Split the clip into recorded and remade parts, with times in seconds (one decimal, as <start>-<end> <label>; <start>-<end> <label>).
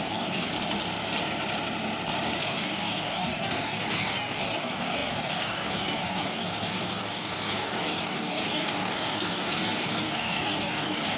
0.0-0.5 remade; 0.5-2.4 recorded; 2.4-11.2 remade